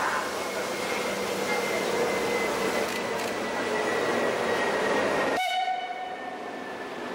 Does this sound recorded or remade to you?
recorded